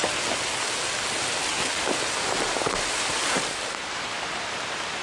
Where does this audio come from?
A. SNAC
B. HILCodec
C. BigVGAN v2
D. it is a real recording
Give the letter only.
D